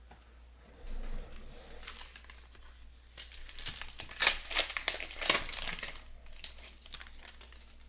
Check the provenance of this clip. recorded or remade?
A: recorded